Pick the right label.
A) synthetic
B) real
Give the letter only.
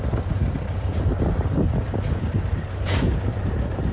B